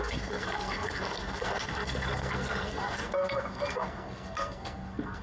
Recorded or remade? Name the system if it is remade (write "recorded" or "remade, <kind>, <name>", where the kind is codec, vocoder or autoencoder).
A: remade, codec, SNAC